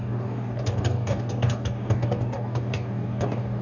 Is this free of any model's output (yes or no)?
no